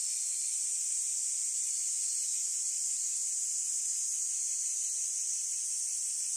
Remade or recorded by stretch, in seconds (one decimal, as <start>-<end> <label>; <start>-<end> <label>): 0.0-6.4 recorded